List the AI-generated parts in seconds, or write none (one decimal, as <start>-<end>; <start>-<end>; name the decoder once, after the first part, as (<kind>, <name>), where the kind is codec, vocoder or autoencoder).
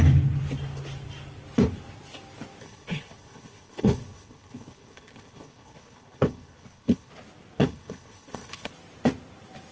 2.6-7.1 (codec, HILCodec); 7.6-8.7